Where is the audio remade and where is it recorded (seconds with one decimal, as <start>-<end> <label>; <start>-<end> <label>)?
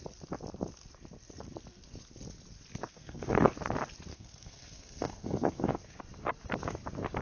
0.0-2.8 recorded; 2.8-3.5 remade; 3.5-4.1 recorded; 4.1-6.0 remade; 6.0-7.2 recorded